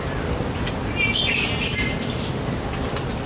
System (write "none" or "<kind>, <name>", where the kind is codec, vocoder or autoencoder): none